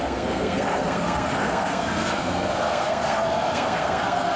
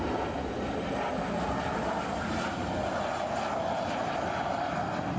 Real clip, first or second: second